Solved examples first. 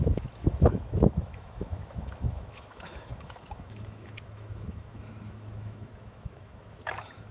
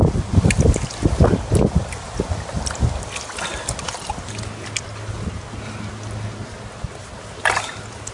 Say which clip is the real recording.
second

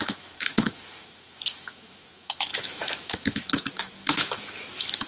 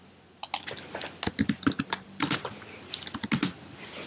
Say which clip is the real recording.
second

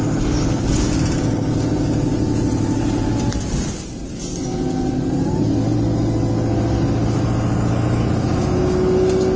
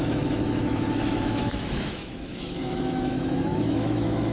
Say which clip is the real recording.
first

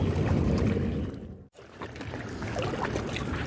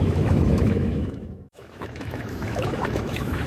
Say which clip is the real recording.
first